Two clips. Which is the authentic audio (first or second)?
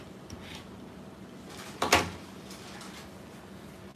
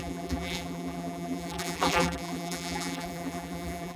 first